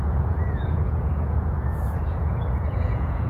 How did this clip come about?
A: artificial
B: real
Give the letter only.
A